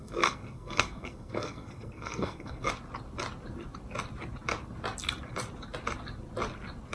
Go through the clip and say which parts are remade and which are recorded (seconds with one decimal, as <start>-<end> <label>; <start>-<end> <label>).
0.0-2.7 remade; 2.7-6.9 recorded